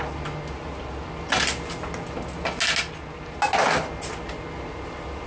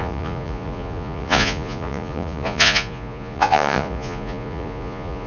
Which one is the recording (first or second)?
first